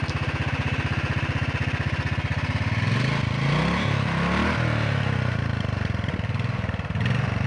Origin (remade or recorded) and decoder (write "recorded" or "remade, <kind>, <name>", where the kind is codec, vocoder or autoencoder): recorded